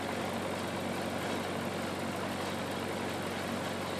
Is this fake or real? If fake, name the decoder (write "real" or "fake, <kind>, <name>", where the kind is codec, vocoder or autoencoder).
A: real